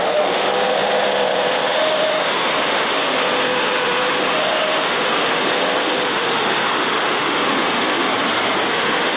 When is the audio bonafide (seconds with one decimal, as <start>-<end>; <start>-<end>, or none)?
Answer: 8.1-8.7